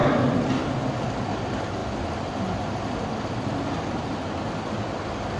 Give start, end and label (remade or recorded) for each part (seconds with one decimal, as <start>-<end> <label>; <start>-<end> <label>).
0.0-5.4 recorded